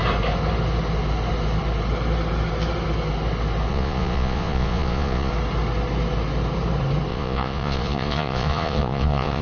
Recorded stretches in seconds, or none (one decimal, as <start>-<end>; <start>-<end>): 0.0-3.7; 5.3-7.1

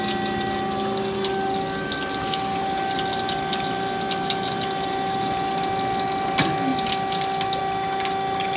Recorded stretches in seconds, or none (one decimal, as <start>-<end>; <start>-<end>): 0.0-8.6